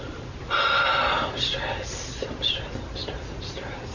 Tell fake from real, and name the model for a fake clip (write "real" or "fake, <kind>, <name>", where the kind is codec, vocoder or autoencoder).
real